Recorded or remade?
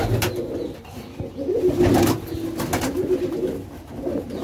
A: recorded